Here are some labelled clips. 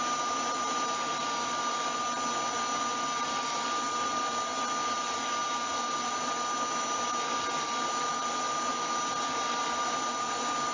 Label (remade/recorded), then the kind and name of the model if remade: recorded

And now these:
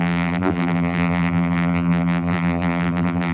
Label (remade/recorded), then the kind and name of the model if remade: remade, vocoder, BigVGAN v2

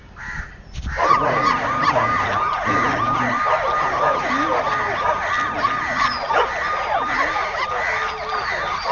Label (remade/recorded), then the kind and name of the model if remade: recorded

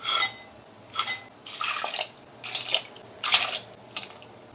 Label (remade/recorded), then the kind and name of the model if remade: recorded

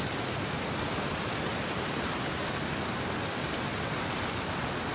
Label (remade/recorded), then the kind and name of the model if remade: recorded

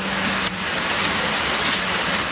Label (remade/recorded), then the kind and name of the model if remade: recorded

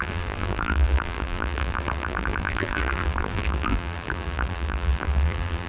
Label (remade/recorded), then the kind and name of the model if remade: remade, vocoder, BigVGAN v2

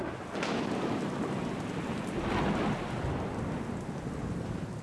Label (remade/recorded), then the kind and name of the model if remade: recorded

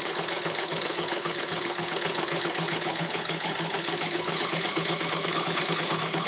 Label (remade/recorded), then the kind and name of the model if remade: remade, codec, HILCodec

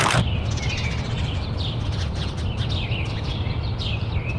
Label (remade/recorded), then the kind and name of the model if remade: recorded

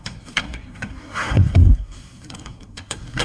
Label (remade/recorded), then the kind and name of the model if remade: remade, codec, SNAC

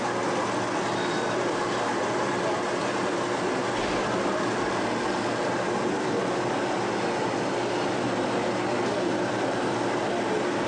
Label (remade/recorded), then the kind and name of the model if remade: recorded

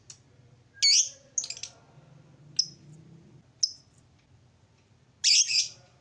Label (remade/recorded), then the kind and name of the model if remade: recorded